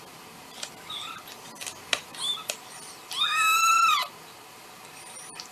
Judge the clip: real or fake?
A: real